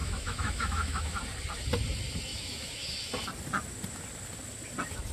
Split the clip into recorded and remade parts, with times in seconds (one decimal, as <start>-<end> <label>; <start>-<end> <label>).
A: 0.0-1.2 remade; 1.2-2.3 recorded; 2.3-3.0 remade; 3.0-5.1 recorded